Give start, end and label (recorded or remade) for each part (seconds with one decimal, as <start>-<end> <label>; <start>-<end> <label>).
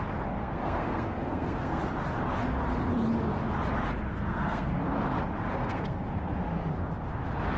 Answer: 0.0-0.4 recorded; 0.4-1.8 remade; 1.8-4.1 recorded; 4.1-4.7 remade; 4.7-5.6 recorded; 5.6-6.1 remade; 6.1-7.6 recorded